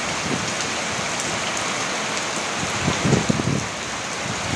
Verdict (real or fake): real